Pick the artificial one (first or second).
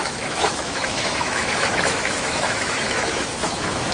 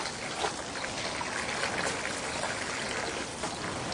first